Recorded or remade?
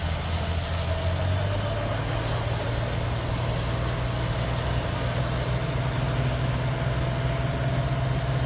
recorded